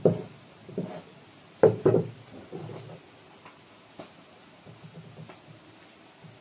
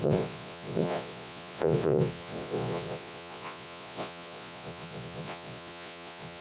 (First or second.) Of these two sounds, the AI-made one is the second